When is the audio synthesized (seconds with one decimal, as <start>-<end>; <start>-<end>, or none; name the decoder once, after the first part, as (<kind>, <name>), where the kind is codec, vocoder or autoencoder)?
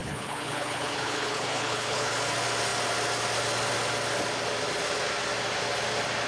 0.0-2.1 (codec, HILCodec)